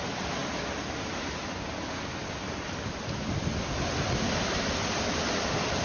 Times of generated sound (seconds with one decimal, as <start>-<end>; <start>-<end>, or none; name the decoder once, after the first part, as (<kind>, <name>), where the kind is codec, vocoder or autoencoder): none